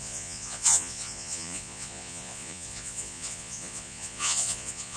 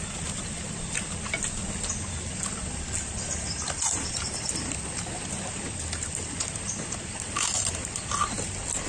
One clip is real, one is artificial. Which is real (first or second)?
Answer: second